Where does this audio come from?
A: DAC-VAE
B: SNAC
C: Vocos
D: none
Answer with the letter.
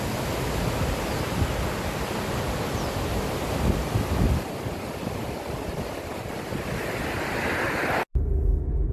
D